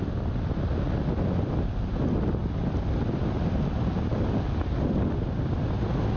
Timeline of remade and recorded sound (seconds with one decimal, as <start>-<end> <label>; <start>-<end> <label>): 0.0-6.2 recorded